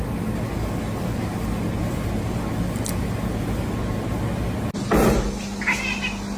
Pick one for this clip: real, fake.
real